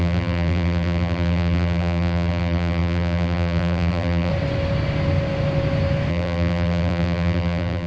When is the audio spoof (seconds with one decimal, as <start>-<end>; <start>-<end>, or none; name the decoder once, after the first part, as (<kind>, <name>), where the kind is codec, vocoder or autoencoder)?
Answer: 0.0-4.3 (vocoder, BigVGAN v2); 6.1-7.9